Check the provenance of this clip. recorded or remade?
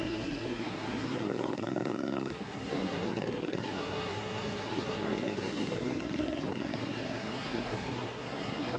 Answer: remade